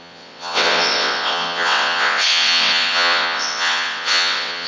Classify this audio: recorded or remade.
remade